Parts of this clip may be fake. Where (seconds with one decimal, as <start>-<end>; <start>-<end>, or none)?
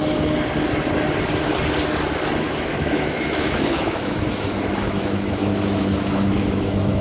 2.7-7.0